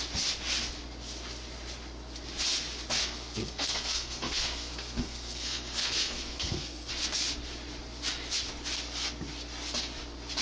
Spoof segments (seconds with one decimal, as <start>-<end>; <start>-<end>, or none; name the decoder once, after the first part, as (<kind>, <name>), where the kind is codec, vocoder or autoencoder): 3.0-6.9 (codec, SNAC)